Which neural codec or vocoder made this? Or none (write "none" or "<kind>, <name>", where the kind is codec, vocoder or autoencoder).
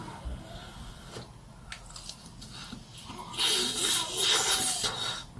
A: none